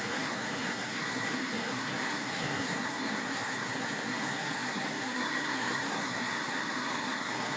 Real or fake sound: fake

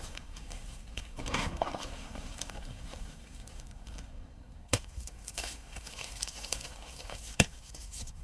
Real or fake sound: fake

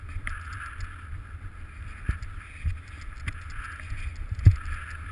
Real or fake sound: real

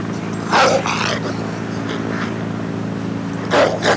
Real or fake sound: real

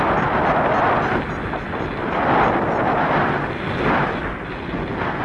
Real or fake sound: real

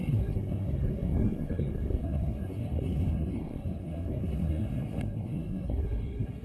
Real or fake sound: fake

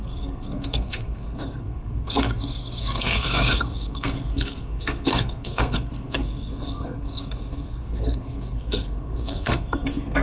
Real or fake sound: fake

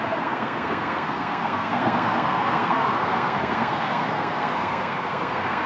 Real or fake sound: fake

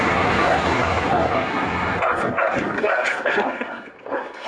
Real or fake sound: fake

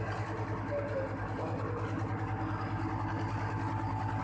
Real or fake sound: real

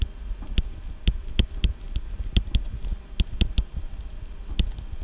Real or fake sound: real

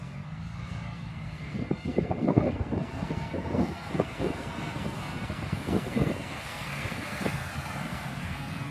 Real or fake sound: fake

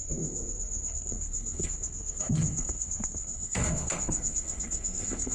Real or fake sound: fake